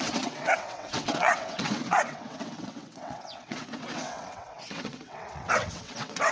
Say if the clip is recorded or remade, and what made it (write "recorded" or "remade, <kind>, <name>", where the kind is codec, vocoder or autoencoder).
remade, vocoder, WaveNeXt